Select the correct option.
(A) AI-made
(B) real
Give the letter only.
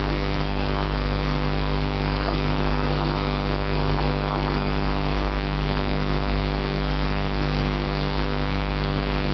A